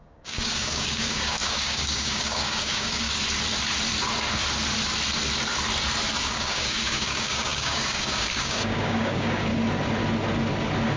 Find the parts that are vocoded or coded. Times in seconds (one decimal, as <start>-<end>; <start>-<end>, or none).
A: 0.0-3.2; 6.2-9.5